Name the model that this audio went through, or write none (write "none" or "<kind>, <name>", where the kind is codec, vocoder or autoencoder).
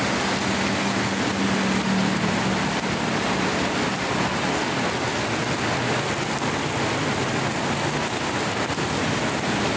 none